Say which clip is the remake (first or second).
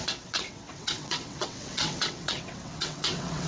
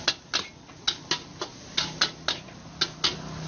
first